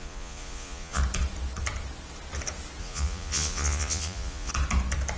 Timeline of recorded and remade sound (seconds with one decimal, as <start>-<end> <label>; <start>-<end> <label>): 0.0-1.0 remade; 1.0-2.8 recorded; 2.8-4.5 remade; 4.5-5.2 recorded